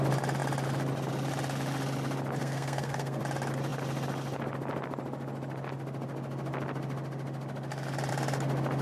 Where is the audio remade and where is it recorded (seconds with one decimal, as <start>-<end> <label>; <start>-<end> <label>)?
0.0-2.4 recorded; 2.4-3.2 remade; 3.2-8.8 recorded